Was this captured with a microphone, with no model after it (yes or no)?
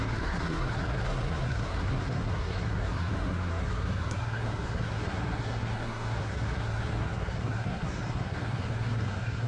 no